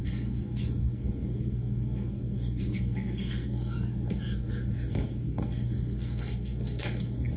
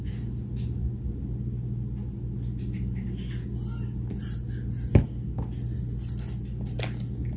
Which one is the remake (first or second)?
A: first